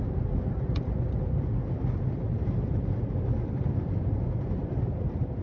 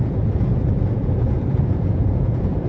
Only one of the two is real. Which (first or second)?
first